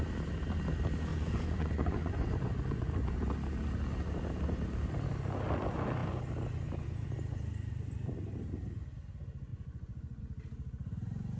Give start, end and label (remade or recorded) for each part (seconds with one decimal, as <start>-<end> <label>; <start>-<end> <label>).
0.0-1.1 recorded; 1.1-2.9 remade; 2.9-9.5 recorded; 9.5-10.2 remade; 10.2-11.4 recorded